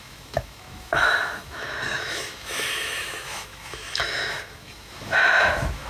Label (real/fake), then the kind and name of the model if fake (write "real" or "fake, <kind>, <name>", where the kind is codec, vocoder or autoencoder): fake, autoencoder, DAC-VAE